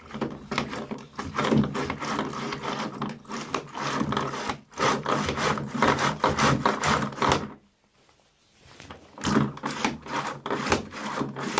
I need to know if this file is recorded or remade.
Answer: recorded